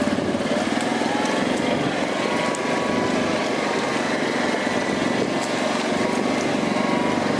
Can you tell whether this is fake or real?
real